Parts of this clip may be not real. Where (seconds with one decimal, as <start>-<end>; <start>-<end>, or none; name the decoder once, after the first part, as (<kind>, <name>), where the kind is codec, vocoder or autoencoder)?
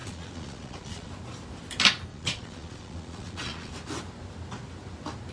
0.0-1.1 (vocoder, Vocos); 2.1-3.7